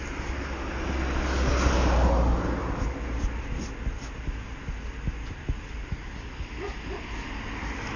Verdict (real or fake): real